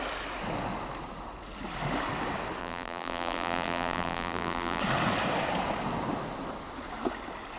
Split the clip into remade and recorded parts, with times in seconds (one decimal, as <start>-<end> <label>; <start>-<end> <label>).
0.0-2.6 recorded; 2.6-4.8 remade; 4.8-7.6 recorded